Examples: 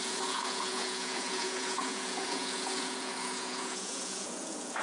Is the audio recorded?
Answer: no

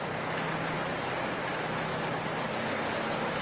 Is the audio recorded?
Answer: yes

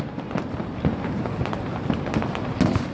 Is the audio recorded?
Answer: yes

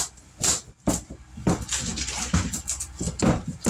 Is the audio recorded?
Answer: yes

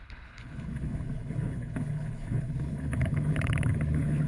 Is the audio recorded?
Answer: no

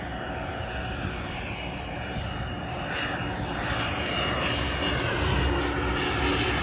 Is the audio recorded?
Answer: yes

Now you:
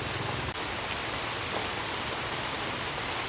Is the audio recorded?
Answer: yes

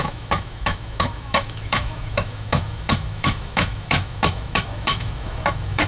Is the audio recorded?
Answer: no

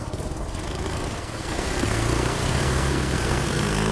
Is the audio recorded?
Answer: no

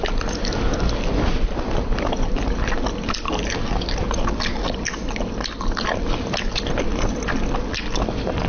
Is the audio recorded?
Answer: yes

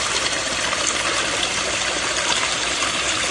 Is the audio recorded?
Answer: no